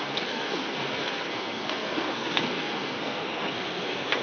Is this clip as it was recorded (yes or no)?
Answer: no